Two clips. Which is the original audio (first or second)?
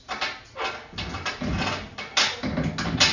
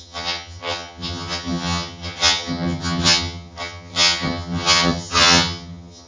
first